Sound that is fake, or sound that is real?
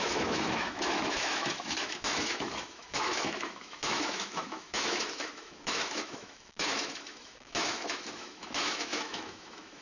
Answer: fake